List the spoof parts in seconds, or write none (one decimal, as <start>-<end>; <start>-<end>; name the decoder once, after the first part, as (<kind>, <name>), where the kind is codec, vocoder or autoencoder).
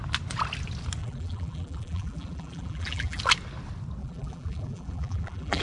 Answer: 1.0-3.2 (vocoder, BigVGAN v2); 4.0-5.6